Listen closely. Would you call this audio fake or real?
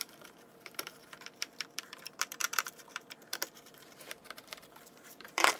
fake